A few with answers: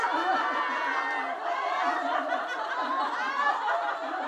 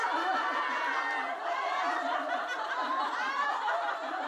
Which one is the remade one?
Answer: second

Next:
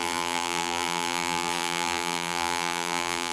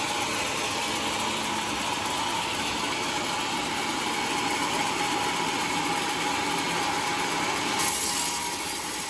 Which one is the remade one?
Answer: first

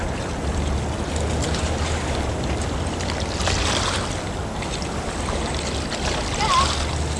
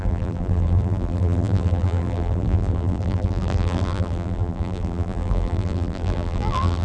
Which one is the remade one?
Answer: second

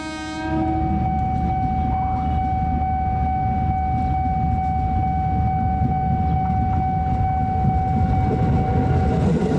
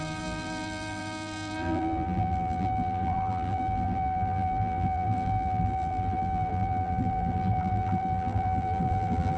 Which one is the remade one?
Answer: second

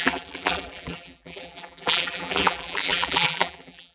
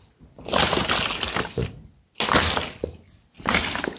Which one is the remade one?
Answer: first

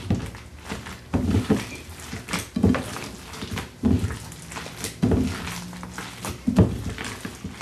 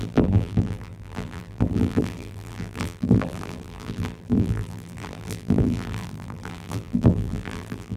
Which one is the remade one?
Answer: second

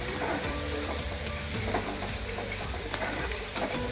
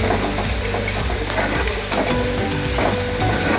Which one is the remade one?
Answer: first